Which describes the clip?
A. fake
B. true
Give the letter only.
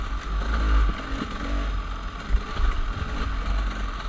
B